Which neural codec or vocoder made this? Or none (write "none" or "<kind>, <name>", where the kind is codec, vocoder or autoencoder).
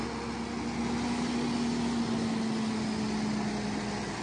none